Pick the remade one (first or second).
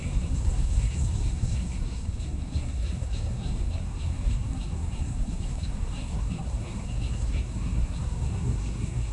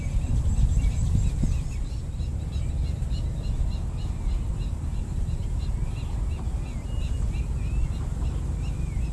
first